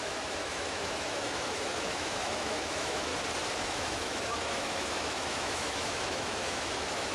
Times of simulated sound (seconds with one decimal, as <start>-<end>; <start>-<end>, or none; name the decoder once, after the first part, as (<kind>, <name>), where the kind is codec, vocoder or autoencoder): 0.0-3.1 (autoencoder, DAC-VAE); 3.6-7.1